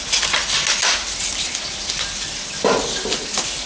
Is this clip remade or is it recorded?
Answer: recorded